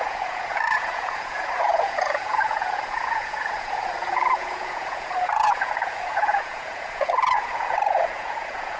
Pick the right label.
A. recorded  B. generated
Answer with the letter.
B